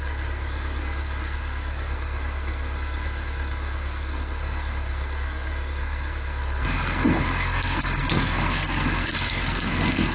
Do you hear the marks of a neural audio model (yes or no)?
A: yes